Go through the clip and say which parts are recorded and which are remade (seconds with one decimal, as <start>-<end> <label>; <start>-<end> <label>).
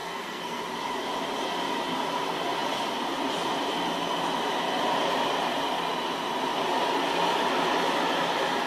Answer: 0.0-0.6 remade; 0.6-8.7 recorded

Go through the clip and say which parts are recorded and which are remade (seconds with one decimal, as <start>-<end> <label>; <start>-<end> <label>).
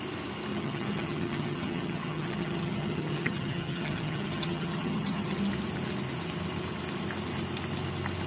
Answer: 0.0-0.5 recorded; 0.5-5.4 remade; 5.4-8.3 recorded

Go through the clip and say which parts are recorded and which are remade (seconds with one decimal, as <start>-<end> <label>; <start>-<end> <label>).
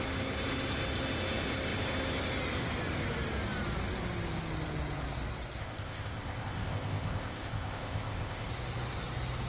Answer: 0.0-5.6 recorded; 5.6-8.5 remade; 8.5-9.5 recorded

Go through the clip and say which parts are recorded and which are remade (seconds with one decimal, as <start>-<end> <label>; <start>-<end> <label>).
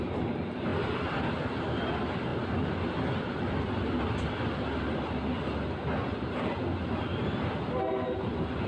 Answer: 0.0-8.7 recorded